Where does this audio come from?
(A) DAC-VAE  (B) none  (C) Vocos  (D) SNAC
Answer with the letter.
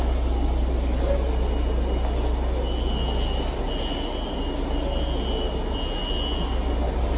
B